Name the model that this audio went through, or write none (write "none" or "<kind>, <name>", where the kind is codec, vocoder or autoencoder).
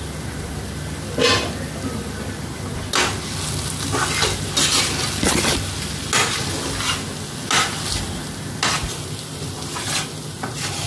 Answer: none